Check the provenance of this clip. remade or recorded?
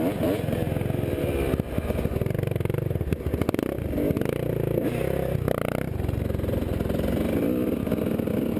recorded